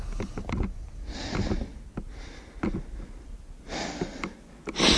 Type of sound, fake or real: real